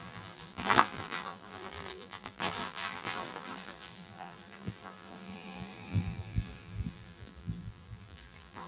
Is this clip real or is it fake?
fake